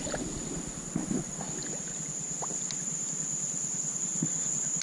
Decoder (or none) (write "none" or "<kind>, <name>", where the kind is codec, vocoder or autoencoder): vocoder, BigVGAN v2